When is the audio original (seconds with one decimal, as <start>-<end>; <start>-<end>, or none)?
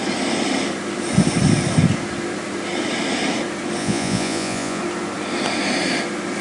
0.0-3.8; 4.8-6.4